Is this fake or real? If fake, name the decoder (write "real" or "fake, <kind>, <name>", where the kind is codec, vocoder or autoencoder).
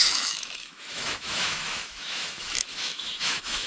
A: fake, autoencoder, DAC-VAE